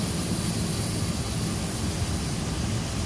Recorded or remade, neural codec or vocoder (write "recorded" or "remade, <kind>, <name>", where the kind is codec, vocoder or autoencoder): recorded